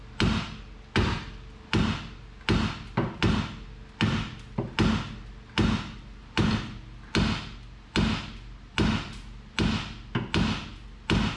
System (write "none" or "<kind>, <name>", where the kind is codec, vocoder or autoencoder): none